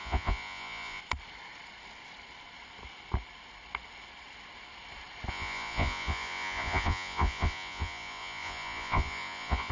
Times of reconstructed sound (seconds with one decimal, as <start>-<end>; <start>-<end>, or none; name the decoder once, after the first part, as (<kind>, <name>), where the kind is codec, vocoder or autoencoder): 0.0-1.0 (vocoder, Vocos); 5.3-9.7